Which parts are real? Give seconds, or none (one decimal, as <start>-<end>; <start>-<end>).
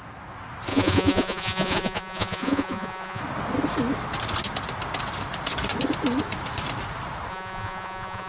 0.0-0.7; 3.2-7.3